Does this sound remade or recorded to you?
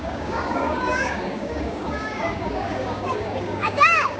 remade